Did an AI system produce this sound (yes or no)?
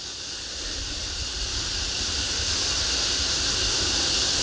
no